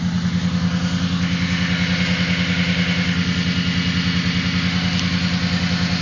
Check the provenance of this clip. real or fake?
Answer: real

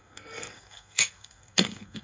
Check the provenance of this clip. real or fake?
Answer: fake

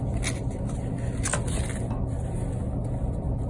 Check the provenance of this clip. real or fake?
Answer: real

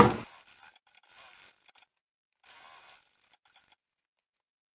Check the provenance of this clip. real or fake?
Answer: real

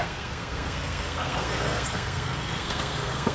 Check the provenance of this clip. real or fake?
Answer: fake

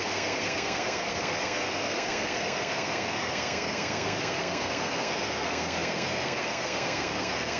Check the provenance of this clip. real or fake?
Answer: fake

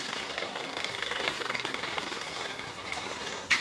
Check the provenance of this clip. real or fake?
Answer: fake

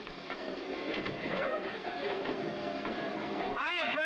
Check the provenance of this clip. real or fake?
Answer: fake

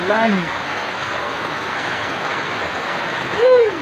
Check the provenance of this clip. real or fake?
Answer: fake